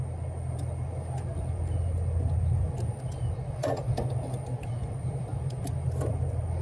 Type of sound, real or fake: real